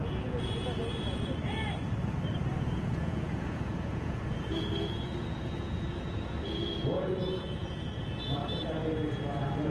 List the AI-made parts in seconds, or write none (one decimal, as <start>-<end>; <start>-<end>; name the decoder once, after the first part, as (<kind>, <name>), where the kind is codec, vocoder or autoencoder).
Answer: 0.0-1.3 (vocoder, Vocos); 2.5-8.4; 9.1-9.7